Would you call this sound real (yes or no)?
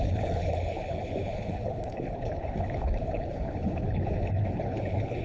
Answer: no